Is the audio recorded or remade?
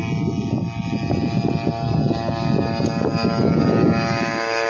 recorded